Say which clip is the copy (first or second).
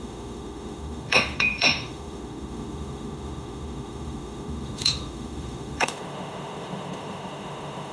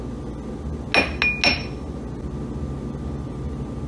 first